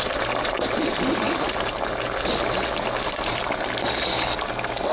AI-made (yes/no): no